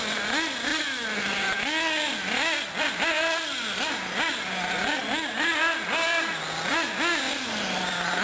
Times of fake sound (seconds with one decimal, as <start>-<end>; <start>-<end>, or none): none